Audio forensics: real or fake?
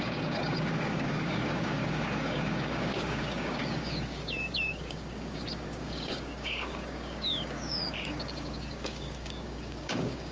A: fake